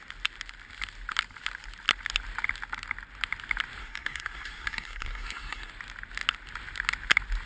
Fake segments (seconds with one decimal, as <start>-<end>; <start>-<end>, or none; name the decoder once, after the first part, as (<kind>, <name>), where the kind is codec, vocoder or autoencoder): 3.8-5.7 (codec, SNAC)